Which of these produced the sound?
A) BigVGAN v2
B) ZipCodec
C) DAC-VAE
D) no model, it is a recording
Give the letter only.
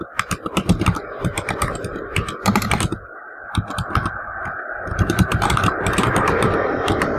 A